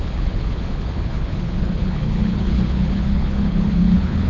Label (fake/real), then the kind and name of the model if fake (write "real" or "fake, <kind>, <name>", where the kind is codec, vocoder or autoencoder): fake, codec, HILCodec